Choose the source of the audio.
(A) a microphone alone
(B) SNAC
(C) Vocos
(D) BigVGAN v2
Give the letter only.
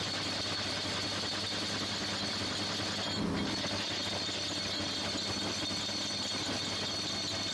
A